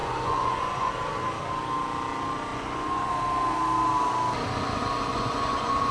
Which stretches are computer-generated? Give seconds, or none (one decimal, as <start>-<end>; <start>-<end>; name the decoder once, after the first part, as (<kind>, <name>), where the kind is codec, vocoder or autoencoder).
0.0-0.9 (vocoder, Vocos); 2.5-3.1; 5.1-5.9